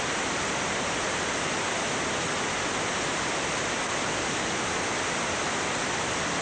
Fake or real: real